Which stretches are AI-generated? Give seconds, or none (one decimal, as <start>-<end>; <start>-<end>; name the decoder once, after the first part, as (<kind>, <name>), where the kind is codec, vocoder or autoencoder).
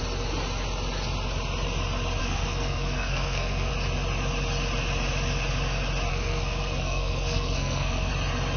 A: 2.2-3.7 (codec, SNAC); 6.1-8.1